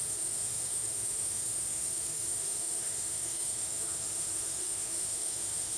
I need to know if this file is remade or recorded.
remade